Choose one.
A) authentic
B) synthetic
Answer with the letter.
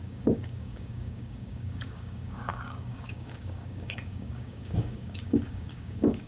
B